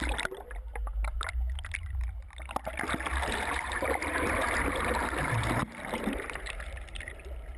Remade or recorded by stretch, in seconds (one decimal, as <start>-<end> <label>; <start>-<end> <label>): 0.0-3.1 recorded; 3.1-7.1 remade; 7.1-7.6 recorded